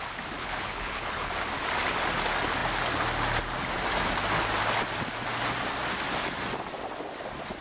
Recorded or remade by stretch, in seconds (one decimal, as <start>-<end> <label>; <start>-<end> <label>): 0.0-0.4 recorded; 0.4-1.3 remade; 1.3-7.6 recorded